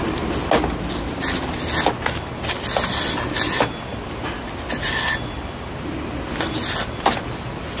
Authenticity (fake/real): real